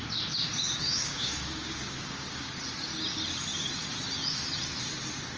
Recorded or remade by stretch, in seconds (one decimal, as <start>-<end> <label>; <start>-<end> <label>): 0.0-0.8 recorded; 0.8-2.5 remade; 2.5-5.4 recorded